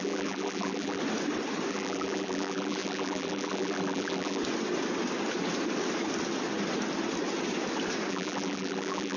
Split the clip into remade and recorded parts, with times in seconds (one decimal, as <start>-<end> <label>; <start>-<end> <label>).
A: 0.0-1.0 remade; 1.0-1.7 recorded; 1.7-4.4 remade; 4.4-8.1 recorded; 8.1-9.2 remade